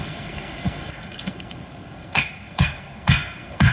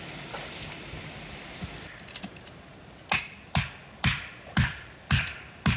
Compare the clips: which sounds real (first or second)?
second